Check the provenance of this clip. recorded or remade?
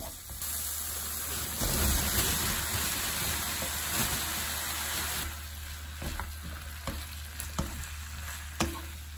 recorded